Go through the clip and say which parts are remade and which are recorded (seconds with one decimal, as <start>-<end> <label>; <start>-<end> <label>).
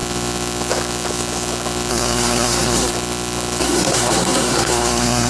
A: 0.0-1.9 recorded; 1.9-2.9 remade; 2.9-3.6 recorded; 3.6-5.3 remade